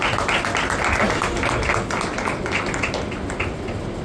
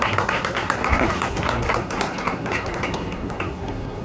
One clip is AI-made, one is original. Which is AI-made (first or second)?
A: second